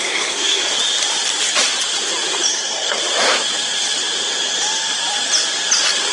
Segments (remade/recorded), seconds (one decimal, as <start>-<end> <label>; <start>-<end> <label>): 0.0-0.6 remade; 0.6-2.5 recorded; 2.5-3.0 remade; 3.0-6.1 recorded